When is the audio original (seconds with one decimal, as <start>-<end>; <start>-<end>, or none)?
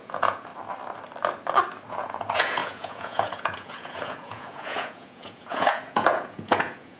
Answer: 0.5-1.9